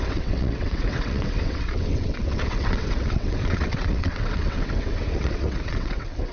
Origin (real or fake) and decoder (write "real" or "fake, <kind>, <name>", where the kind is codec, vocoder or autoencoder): fake, vocoder, WaveNeXt